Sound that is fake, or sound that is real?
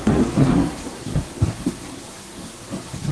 fake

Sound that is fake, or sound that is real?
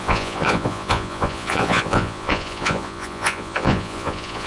fake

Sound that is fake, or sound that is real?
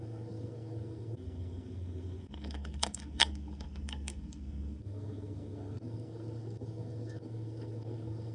fake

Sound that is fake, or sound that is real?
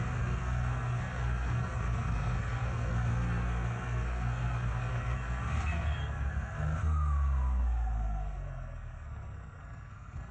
fake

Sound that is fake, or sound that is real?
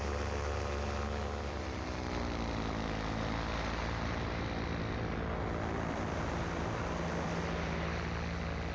real